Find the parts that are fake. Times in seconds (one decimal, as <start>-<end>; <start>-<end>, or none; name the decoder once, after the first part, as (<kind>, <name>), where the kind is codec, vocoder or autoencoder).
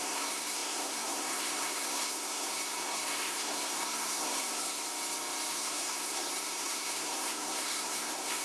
0.0-4.8 (codec, SNAC); 5.5-8.4